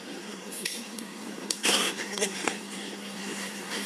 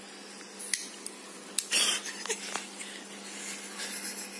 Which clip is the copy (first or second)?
first